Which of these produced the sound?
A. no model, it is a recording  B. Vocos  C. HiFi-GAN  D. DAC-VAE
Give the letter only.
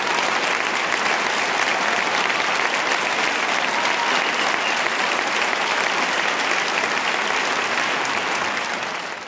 A